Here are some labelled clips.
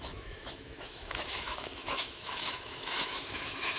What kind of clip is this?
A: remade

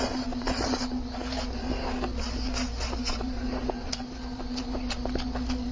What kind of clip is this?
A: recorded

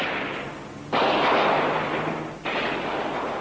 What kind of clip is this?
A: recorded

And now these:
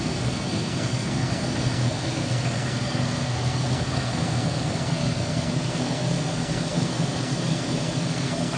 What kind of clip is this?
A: remade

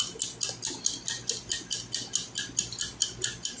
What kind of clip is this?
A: recorded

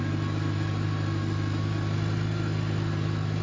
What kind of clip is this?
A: recorded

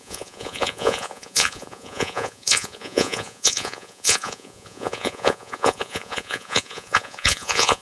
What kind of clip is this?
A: remade